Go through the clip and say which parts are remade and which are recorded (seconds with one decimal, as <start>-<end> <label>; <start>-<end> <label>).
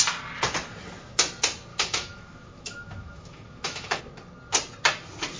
0.0-1.7 recorded; 1.7-4.0 remade; 4.0-5.4 recorded